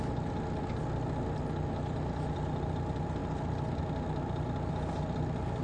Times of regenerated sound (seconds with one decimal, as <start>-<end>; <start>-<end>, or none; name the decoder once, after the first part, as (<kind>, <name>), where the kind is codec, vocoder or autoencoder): none